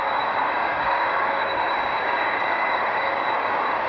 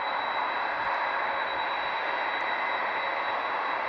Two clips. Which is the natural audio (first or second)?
second